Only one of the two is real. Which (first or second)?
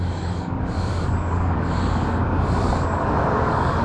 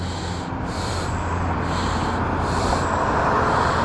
second